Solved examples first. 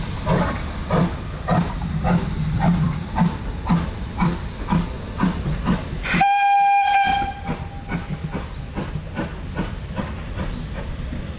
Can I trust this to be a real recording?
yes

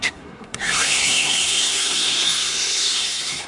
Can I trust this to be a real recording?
no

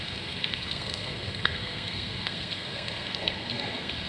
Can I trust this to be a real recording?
no